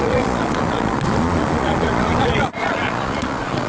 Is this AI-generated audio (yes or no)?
yes